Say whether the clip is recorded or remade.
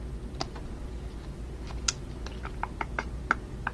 recorded